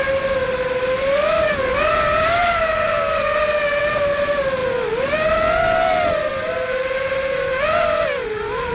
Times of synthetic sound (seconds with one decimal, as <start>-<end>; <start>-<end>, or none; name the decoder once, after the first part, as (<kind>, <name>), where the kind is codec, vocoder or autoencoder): 2.4-3.1 (vocoder, BigVGAN v2); 6.3-6.8